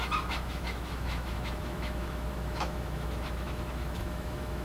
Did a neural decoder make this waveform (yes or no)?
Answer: yes